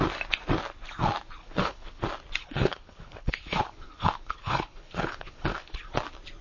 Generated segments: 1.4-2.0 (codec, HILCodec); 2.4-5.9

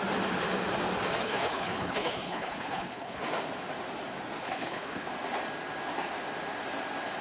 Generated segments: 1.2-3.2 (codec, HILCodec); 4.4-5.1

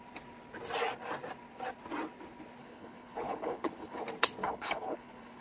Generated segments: 2.6-4.0 (codec, HILCodec); 4.4-5.4

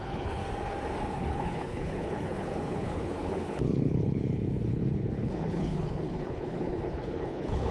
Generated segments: 0.0-0.4 (codec, HILCodec); 1.1-7.7